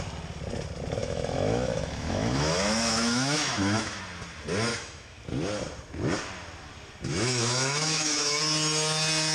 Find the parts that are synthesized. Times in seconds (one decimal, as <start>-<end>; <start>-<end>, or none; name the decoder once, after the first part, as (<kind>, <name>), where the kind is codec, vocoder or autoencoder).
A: 1.0-4.0 (autoencoder, DAC-VAE); 4.7-5.2; 7.1-8.4